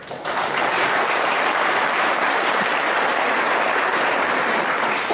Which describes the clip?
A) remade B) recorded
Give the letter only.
A